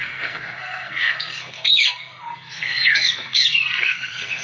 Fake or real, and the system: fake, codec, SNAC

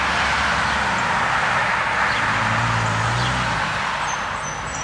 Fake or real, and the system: real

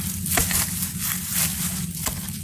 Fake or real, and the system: real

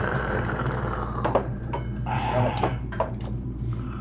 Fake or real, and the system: fake, vocoder, BigVGAN v2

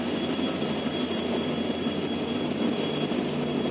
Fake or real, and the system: real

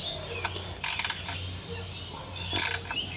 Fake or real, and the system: real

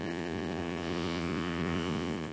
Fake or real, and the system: fake, vocoder, Vocos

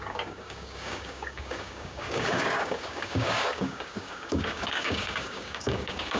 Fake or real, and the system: fake, codec, DAC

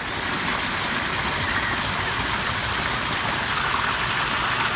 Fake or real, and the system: real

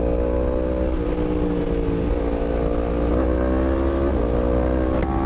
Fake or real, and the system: real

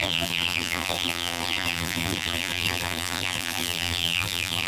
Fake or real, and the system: fake, vocoder, BigVGAN v2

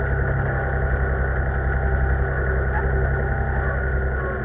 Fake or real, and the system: real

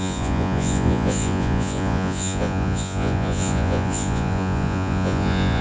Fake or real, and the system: fake, vocoder, Vocos